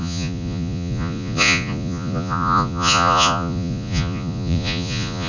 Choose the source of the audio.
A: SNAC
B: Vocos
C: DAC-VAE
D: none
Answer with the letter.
B